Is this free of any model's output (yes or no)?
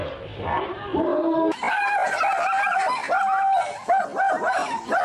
yes